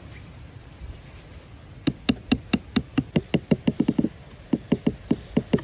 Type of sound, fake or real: real